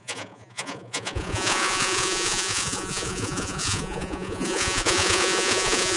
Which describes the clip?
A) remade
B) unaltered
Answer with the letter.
A